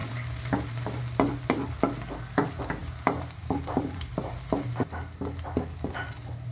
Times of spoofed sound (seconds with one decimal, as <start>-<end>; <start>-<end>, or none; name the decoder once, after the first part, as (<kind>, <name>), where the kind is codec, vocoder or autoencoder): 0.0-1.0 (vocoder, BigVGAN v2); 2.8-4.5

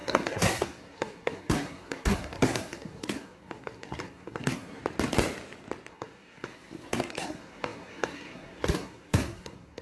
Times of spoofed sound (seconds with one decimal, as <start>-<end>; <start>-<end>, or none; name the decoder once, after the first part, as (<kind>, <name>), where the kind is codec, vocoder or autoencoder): 0.0-4.8 (codec, SNAC); 5.9-9.8

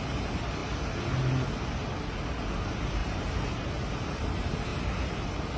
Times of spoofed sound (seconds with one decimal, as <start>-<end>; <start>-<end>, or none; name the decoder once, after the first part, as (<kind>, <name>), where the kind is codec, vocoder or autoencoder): 3.0-3.9 (vocoder, BigVGAN v2); 4.7-5.6

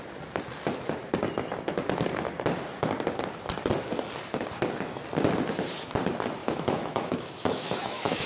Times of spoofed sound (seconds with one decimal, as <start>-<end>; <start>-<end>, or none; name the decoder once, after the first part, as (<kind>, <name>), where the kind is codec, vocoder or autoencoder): 6.4-8.3 (autoencoder, DAC-VAE)